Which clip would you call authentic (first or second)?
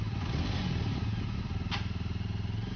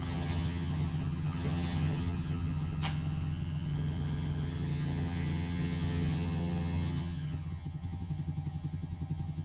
first